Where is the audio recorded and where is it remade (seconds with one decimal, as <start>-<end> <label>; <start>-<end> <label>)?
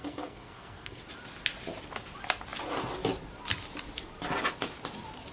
0.0-1.0 remade; 1.0-5.3 recorded